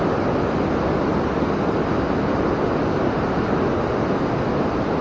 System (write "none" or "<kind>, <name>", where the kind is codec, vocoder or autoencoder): none